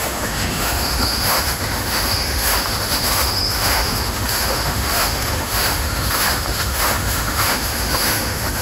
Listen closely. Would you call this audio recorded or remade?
remade